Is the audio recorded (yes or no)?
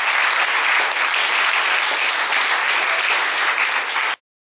yes